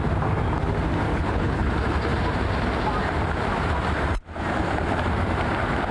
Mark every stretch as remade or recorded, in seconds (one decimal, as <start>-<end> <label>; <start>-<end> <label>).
0.0-1.1 recorded; 1.1-1.7 remade; 1.7-5.9 recorded